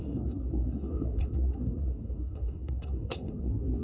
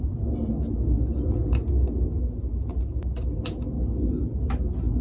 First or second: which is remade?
first